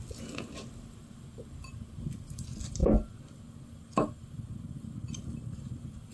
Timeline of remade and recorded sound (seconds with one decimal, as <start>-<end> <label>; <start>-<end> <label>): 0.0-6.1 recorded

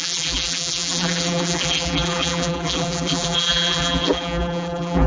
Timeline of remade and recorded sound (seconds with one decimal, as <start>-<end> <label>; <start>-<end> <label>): 0.0-5.1 remade

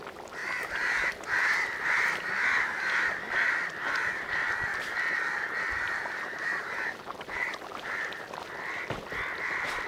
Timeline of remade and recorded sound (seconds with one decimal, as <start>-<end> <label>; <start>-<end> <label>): 0.0-0.4 recorded; 0.4-1.1 remade; 1.1-4.7 recorded; 4.7-8.2 remade; 8.2-9.9 recorded